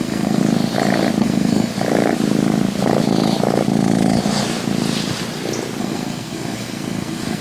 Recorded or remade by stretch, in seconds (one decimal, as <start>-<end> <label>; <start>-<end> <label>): 0.0-0.4 remade; 0.4-1.2 recorded; 1.2-1.7 remade; 1.7-5.8 recorded; 5.8-7.4 remade